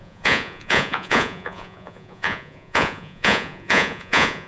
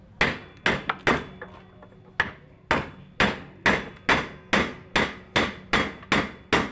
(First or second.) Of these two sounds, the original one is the second